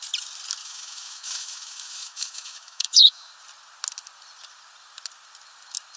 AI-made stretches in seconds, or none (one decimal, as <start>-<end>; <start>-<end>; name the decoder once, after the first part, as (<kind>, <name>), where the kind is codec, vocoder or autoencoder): 0.6-3.3 (autoencoder, DAC-VAE)